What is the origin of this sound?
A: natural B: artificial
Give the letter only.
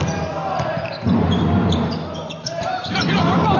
A